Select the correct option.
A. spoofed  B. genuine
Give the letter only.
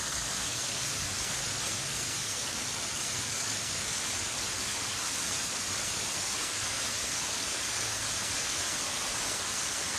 A